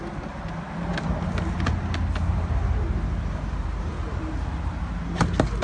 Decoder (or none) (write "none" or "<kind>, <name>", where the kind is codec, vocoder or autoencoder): none